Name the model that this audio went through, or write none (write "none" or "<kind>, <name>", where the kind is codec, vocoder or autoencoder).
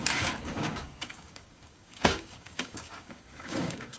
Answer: codec, DAC